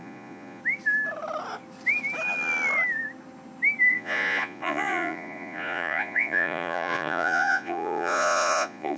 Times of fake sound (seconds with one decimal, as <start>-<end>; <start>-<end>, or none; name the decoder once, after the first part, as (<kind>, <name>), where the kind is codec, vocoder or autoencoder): 0.0-0.6 (vocoder, Vocos); 3.9-9.0